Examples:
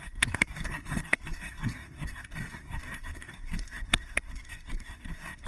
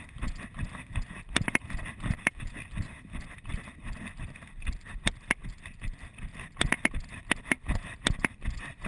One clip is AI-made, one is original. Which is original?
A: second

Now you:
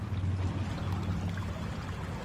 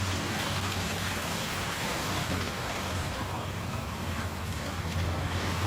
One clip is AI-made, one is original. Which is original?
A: first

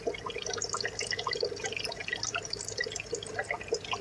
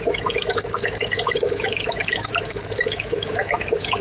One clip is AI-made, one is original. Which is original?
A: first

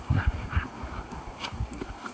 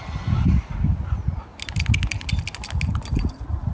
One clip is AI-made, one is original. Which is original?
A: second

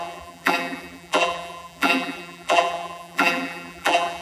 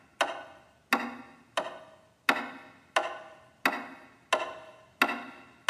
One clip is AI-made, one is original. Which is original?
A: second